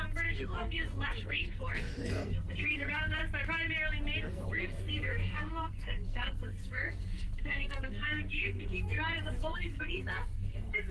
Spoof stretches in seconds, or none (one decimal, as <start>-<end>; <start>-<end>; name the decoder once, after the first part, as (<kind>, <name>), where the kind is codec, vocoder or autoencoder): 0.0-3.2 (codec, SNAC); 4.2-10.9